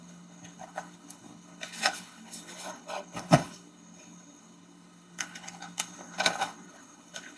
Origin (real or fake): fake